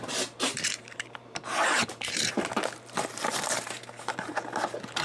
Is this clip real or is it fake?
fake